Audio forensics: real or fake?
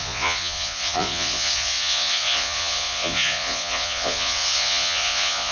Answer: fake